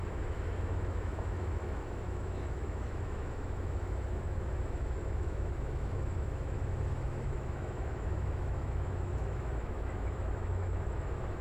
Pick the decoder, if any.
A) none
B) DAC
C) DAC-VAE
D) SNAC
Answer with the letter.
C